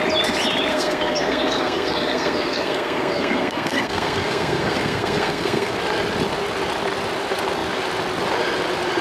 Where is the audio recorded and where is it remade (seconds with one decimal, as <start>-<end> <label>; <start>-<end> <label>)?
0.0-0.7 recorded; 0.7-5.8 remade; 5.8-9.0 recorded